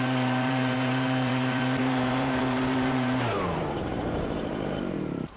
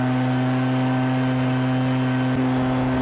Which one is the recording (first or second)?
second